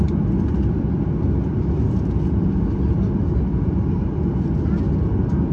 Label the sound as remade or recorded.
recorded